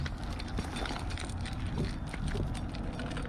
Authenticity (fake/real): real